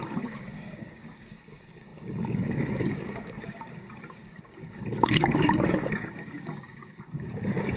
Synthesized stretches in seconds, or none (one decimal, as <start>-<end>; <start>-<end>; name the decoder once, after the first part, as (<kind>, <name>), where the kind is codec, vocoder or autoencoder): 0.0-7.8 (codec, DAC)